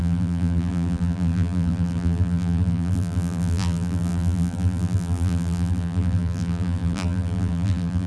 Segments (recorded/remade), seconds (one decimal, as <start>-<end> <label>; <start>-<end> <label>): 0.0-8.1 remade